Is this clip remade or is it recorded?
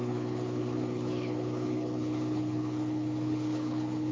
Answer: remade